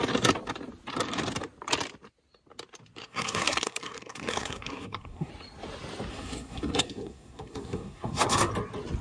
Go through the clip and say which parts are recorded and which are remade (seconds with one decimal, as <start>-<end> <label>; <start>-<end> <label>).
0.0-3.0 recorded; 3.0-5.3 remade; 5.3-6.1 recorded; 6.1-8.5 remade; 8.5-9.0 recorded